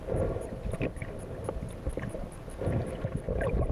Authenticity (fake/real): fake